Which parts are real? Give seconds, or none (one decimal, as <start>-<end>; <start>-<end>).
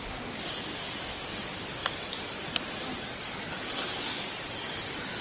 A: 0.0-5.2